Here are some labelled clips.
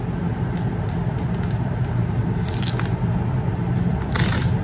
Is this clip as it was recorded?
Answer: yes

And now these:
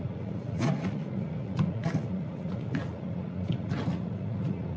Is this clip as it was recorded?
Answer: no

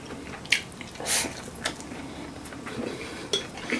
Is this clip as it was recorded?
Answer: yes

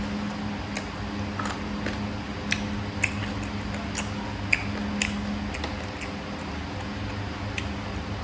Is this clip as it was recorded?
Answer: yes